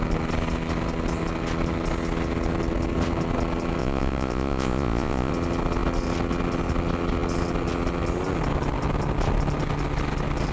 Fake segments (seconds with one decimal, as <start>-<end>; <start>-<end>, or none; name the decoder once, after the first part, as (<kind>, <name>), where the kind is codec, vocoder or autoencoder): 3.8-5.3 (vocoder, Vocos)